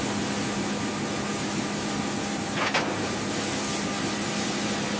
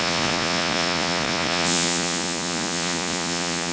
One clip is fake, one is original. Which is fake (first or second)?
second